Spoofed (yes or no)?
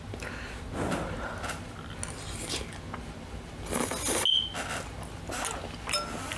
no